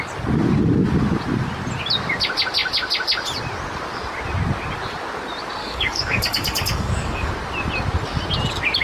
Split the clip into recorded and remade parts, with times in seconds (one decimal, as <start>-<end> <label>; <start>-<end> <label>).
0.0-5.6 recorded; 5.6-7.3 remade; 7.3-8.8 recorded